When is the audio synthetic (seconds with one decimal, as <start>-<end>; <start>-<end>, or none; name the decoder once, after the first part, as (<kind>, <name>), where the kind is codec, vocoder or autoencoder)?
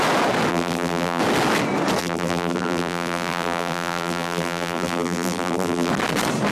0.5-1.2 (vocoder, BigVGAN v2); 2.0-5.9